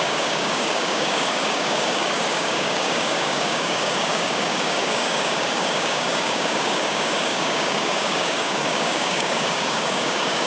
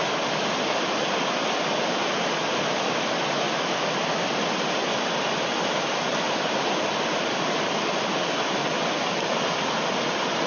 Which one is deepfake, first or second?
first